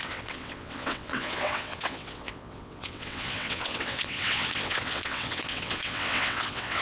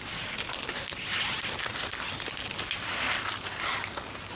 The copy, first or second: first